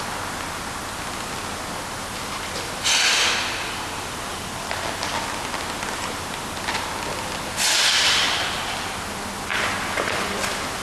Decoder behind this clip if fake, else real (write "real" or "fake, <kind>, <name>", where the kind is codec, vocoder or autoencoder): real